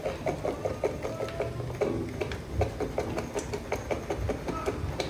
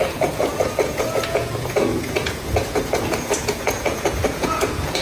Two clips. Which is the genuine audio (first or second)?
first